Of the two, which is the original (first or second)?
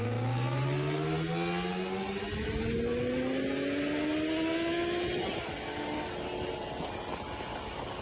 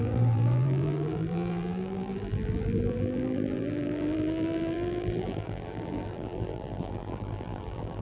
first